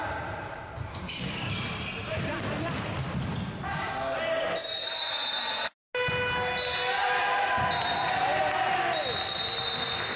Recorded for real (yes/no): yes